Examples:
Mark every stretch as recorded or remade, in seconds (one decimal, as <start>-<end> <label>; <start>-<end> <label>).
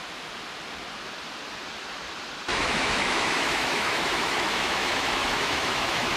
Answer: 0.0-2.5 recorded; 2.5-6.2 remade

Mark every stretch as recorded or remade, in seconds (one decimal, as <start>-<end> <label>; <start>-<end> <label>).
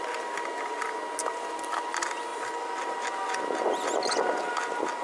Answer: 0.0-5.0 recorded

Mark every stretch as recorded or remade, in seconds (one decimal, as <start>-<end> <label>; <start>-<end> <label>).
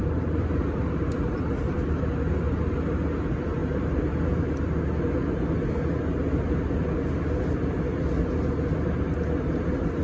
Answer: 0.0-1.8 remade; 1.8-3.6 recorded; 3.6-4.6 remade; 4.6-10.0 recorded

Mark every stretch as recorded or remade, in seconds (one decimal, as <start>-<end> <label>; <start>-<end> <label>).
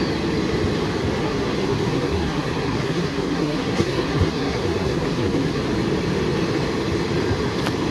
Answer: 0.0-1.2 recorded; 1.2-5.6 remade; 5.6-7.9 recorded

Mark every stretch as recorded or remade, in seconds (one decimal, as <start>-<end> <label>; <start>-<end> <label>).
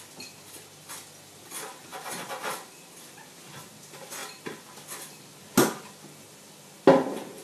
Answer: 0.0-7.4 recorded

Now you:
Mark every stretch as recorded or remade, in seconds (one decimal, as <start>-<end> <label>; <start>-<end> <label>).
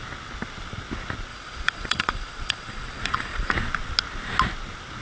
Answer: 0.0-1.3 recorded; 1.3-3.5 remade; 3.5-5.0 recorded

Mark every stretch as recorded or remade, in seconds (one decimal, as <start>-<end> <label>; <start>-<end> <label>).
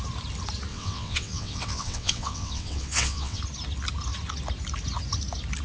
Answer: 0.0-0.7 recorded; 0.7-3.4 remade; 3.4-5.6 recorded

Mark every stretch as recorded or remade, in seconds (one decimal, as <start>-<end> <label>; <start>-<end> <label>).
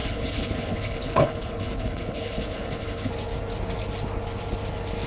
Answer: 0.0-3.1 remade; 3.1-5.1 recorded